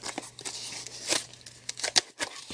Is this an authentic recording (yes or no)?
yes